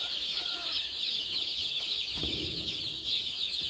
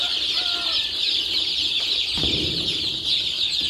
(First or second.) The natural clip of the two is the second